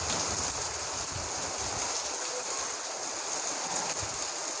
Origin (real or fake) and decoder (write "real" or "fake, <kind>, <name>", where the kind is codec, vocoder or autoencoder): fake, vocoder, BigVGAN v2